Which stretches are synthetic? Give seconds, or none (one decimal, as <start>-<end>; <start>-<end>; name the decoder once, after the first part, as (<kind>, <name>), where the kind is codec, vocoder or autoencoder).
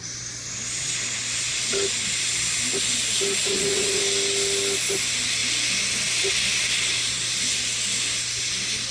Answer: 3.4-4.0 (vocoder, Vocos)